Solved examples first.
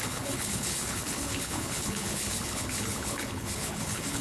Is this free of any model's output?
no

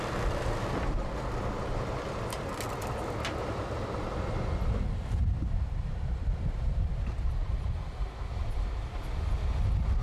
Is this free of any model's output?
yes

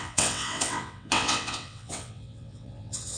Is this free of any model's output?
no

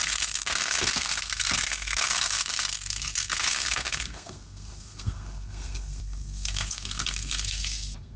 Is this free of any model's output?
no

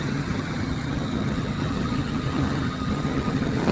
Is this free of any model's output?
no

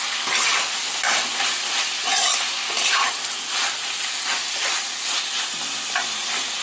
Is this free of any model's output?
yes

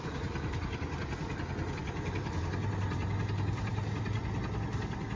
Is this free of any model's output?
yes